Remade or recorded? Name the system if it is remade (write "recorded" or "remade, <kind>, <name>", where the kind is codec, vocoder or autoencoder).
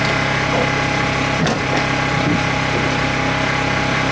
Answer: recorded